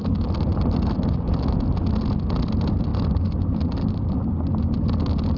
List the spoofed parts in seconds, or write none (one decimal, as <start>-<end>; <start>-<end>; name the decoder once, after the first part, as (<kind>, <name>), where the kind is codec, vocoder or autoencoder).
0.5-1.5 (vocoder, BigVGAN v2); 2.9-4.1